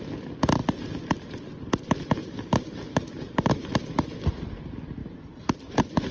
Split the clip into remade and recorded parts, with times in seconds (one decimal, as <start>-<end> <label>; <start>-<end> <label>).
0.0-2.2 recorded; 2.2-4.5 remade; 4.5-6.1 recorded